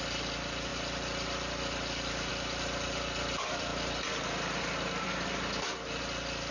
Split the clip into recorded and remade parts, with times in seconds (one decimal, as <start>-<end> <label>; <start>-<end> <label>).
0.0-3.7 remade; 3.7-6.5 recorded